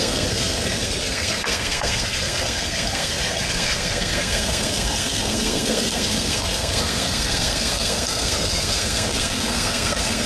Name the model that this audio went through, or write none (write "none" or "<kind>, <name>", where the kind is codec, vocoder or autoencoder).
codec, SNAC